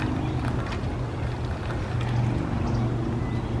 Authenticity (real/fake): real